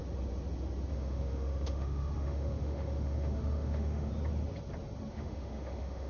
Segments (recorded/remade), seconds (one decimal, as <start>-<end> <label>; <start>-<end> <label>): 0.0-0.9 recorded; 0.9-4.1 remade; 4.1-5.1 recorded; 5.1-6.1 remade